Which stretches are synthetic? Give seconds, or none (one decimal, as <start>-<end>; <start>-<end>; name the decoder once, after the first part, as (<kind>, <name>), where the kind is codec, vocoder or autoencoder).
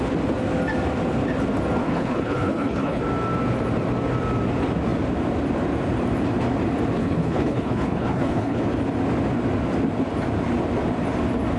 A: 1.8-3.0 (codec, HILCodec); 7.0-8.6